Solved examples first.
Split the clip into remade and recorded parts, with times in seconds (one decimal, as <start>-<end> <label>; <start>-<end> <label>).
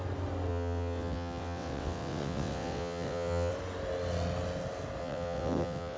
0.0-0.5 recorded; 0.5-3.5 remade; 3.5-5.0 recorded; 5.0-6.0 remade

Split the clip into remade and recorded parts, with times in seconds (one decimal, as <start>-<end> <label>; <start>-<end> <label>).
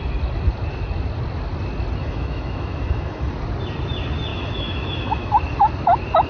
0.0-2.0 recorded; 2.0-3.3 remade; 3.3-4.3 recorded; 4.3-5.3 remade; 5.3-6.3 recorded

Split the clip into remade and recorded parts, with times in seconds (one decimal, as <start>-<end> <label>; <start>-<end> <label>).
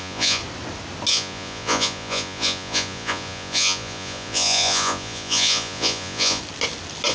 0.0-0.4 remade; 0.4-1.1 recorded; 1.1-6.4 remade; 6.4-7.1 recorded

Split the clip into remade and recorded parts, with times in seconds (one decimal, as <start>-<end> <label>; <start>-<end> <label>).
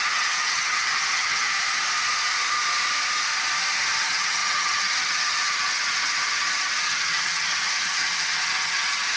0.0-1.5 remade; 1.5-4.0 recorded; 4.0-9.2 remade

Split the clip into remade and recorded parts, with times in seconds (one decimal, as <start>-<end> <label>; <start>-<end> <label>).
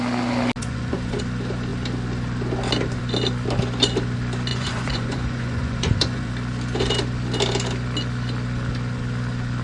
0.0-0.6 recorded; 0.6-1.2 remade; 1.2-4.5 recorded; 4.5-6.3 remade; 6.3-9.6 recorded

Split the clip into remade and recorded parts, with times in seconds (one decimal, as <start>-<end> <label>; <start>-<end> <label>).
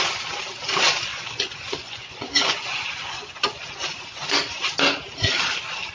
0.0-1.1 recorded; 1.1-4.6 remade; 4.6-5.9 recorded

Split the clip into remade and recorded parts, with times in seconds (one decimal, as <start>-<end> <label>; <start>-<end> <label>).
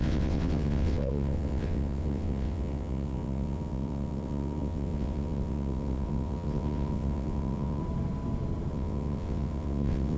0.0-7.8 remade; 7.8-8.7 recorded; 8.7-10.2 remade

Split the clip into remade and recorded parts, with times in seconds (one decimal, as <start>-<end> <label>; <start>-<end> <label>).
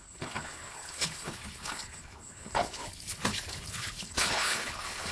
0.0-5.1 remade